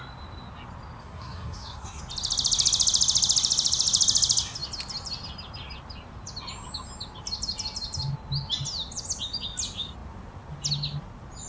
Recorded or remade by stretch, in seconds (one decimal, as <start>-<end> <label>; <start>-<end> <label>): 0.0-1.0 recorded; 1.0-2.0 remade; 2.0-11.5 recorded